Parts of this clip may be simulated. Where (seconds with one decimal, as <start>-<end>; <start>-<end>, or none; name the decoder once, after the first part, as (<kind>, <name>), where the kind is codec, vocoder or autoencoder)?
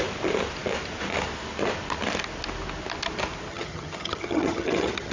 3.5-5.1 (vocoder, HiFi-GAN)